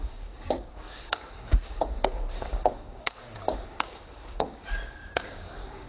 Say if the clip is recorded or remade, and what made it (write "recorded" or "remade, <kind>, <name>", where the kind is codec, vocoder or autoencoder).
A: remade, codec, DAC